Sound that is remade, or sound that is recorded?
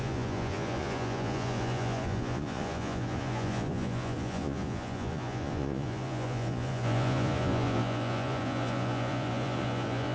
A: remade